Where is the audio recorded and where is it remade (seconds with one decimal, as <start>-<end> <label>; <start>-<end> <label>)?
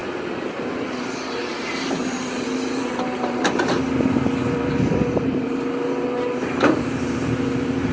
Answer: 0.0-1.4 recorded; 1.4-3.7 remade; 3.7-4.4 recorded; 4.4-7.9 remade